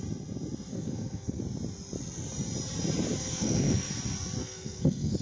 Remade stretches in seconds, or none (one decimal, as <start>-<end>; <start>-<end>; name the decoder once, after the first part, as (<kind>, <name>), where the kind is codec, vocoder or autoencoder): 0.7-1.4 (codec, SNAC); 3.2-3.9; 4.4-5.2